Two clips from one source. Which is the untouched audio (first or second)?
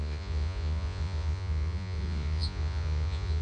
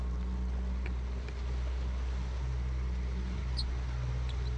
second